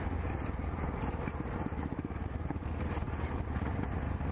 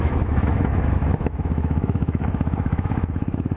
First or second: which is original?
first